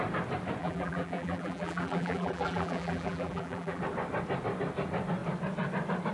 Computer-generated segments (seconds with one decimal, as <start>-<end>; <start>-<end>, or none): 0.6-3.8